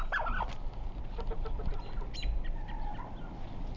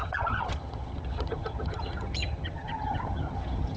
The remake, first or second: second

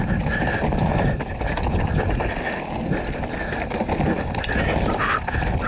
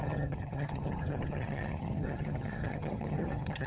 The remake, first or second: second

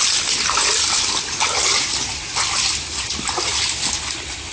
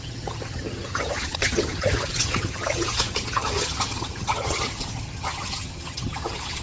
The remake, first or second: second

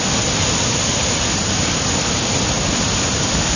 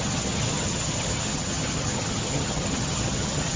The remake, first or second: second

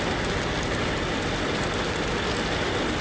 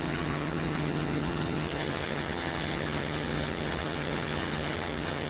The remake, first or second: second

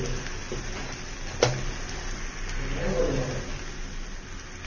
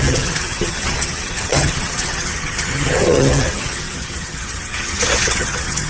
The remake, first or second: second